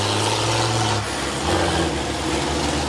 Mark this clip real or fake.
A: real